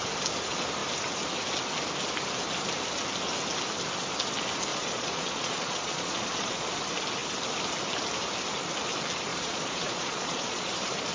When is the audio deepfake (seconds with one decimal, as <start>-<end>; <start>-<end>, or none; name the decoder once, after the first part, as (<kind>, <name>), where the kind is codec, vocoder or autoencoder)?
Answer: 4.7-6.7 (vocoder, Vocos); 9.3-10.7